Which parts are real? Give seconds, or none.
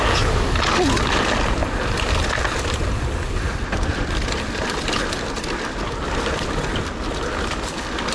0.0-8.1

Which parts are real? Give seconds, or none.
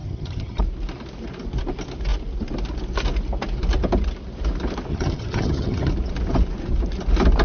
0.6-4.9; 5.9-7.4